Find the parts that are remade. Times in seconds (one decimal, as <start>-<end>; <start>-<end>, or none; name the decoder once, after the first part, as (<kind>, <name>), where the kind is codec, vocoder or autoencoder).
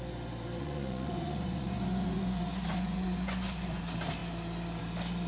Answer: 0.6-3.8 (vocoder, Vocos)